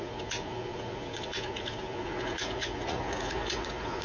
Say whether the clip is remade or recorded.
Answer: remade